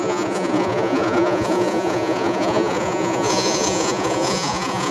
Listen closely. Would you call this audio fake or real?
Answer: fake